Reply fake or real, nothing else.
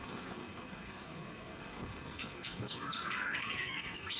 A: fake